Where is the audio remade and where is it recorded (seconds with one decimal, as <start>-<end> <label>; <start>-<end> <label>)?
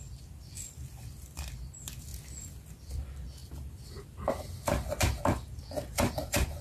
0.0-2.1 remade; 2.1-2.7 recorded; 2.7-6.6 remade